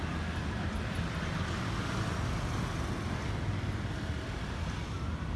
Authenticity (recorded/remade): recorded